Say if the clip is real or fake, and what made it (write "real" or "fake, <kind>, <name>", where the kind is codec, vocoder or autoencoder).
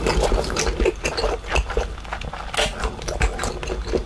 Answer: real